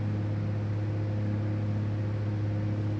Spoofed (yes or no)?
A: no